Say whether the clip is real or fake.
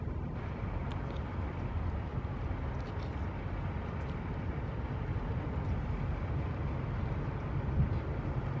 real